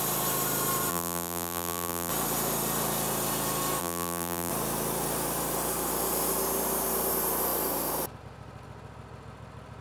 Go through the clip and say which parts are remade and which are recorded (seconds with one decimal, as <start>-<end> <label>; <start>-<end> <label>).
0.0-0.9 recorded; 0.9-2.1 remade; 2.1-3.8 recorded; 3.8-4.5 remade; 4.5-9.8 recorded